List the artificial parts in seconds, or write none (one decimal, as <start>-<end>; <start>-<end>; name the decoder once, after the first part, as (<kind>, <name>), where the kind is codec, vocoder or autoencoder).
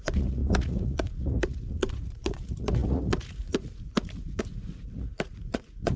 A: 0.0-6.0 (vocoder, Vocos)